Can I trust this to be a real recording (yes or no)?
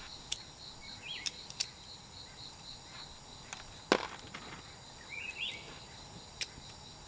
yes